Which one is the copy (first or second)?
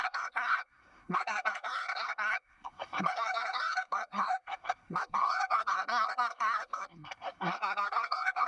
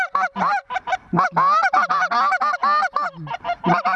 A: first